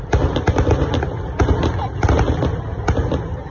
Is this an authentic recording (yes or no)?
yes